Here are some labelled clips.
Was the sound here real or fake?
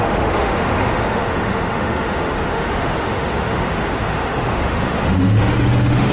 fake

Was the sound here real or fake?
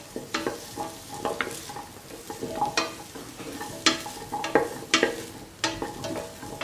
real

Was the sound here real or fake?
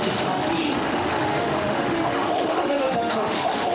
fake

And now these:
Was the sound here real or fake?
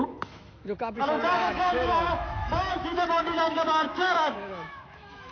fake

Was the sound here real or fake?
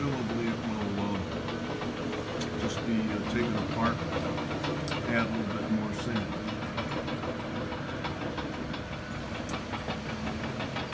real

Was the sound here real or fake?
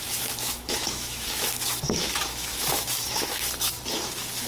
fake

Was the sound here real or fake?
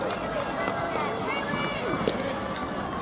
real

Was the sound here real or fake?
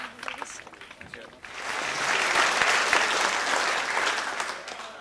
real